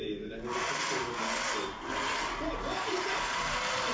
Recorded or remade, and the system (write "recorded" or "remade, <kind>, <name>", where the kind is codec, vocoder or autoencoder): recorded